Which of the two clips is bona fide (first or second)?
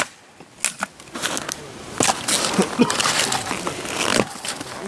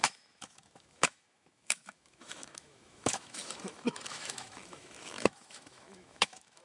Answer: first